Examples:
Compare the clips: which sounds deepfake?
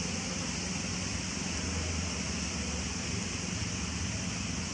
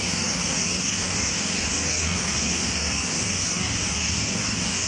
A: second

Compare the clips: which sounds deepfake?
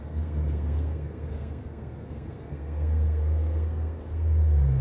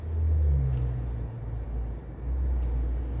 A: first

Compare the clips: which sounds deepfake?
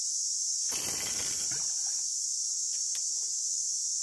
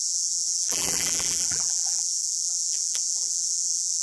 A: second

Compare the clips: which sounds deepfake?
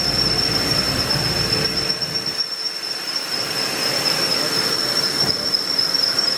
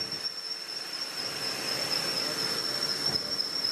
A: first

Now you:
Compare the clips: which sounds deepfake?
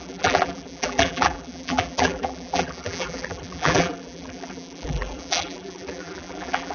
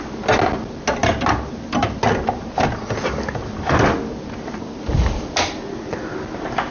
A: first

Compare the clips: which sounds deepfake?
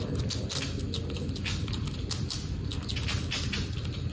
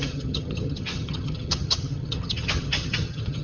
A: second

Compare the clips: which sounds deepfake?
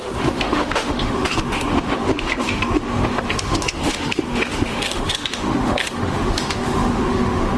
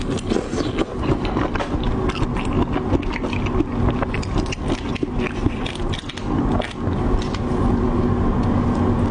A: first